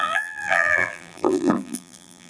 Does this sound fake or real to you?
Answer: fake